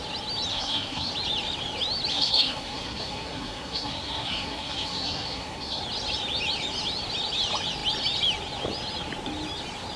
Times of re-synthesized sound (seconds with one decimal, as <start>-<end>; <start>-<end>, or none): 0.5-1.1; 2.1-5.8